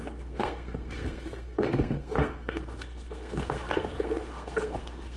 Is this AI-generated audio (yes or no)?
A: yes